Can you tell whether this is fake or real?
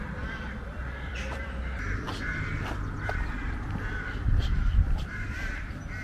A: fake